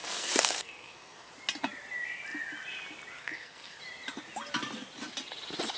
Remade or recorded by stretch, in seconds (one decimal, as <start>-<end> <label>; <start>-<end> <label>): 0.0-1.3 remade; 1.3-3.2 recorded; 3.2-3.8 remade; 3.8-5.8 recorded